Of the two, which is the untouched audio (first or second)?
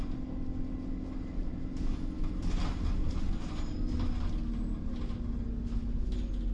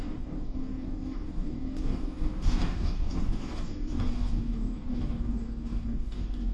first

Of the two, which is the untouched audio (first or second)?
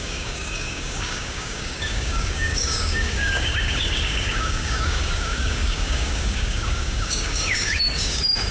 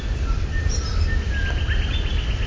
second